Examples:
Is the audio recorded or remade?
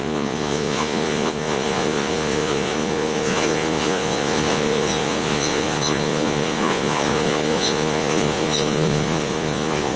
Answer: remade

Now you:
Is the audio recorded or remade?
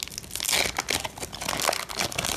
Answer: recorded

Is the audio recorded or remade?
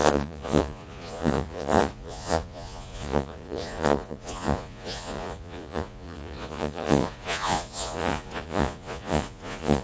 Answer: remade